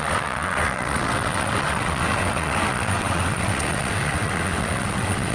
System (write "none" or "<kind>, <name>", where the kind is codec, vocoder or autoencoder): vocoder, WaveNeXt